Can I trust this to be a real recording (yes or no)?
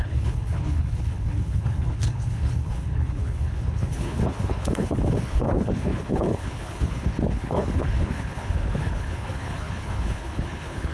no